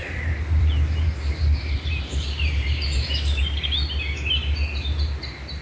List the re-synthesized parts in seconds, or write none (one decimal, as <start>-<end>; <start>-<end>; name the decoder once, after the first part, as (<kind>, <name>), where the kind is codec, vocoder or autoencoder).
0.0-3.4 (vocoder, BigVGAN v2)